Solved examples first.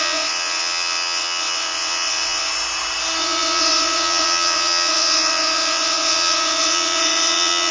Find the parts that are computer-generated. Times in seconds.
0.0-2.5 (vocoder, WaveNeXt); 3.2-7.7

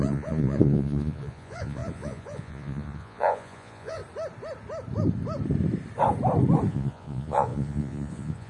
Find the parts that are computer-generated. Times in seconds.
0.0-4.0 (vocoder, Vocos); 6.7-8.5

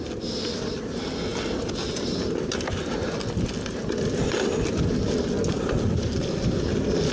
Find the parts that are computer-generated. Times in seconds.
none

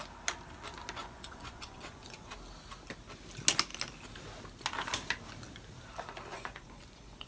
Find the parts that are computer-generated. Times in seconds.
1.0-2.3 (vocoder, Vocos); 6.3-7.3

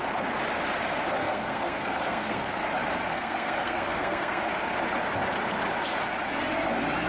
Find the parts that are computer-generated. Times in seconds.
1.2-2.6 (codec, SNAC); 3.1-4.4